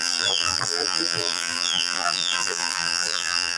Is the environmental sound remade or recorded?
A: remade